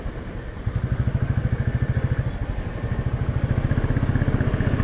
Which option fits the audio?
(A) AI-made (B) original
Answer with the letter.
B